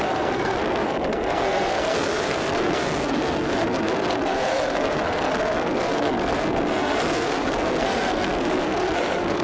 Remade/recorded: remade